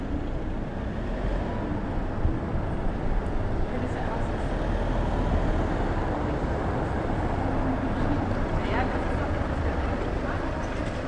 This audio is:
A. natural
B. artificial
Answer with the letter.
A